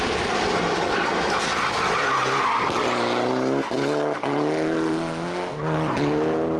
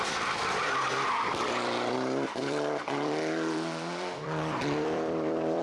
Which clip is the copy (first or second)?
second